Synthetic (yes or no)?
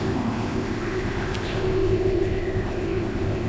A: yes